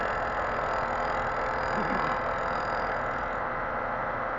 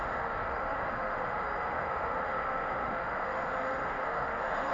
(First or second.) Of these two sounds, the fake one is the second